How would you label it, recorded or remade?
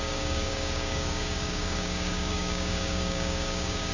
remade